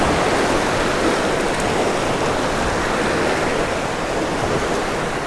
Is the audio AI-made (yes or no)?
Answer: no